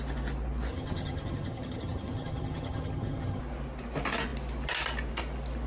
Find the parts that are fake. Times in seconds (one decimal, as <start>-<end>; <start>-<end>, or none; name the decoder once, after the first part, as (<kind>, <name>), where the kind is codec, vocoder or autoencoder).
0.7-3.4 (vocoder, HiFi-GAN)